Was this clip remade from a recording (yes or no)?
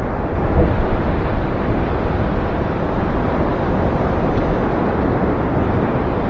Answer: no